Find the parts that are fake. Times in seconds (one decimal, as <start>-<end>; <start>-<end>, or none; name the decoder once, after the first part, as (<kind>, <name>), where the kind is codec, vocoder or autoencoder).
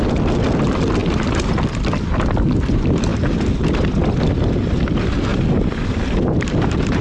1.0-2.5 (vocoder, BigVGAN v2); 3.1-4.0; 5.3-7.0